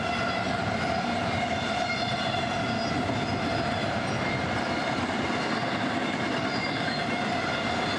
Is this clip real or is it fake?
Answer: real